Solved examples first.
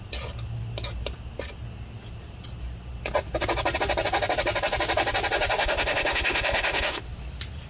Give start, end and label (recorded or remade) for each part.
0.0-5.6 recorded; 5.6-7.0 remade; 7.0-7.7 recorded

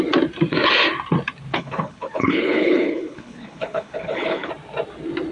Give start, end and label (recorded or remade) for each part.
0.0-1.5 recorded; 1.5-4.5 remade; 4.5-5.3 recorded

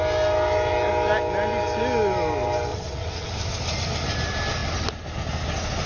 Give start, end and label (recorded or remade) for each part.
0.0-2.7 recorded; 2.7-3.3 remade; 3.3-5.9 recorded

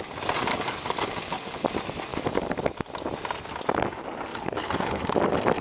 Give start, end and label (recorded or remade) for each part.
0.0-0.5 recorded; 0.5-1.7 remade; 1.7-2.1 recorded; 2.1-2.7 remade; 2.7-4.3 recorded; 4.3-5.1 remade; 5.1-5.6 recorded

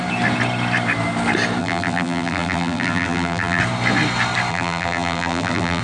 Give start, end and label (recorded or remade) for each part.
0.0-1.6 recorded; 1.6-3.6 remade; 3.6-4.5 recorded; 4.5-5.8 remade

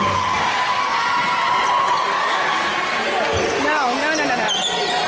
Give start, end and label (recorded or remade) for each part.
0.0-0.9 remade; 0.9-1.8 recorded; 1.8-2.7 remade; 2.7-3.6 recorded; 3.6-4.0 remade; 4.0-5.1 recorded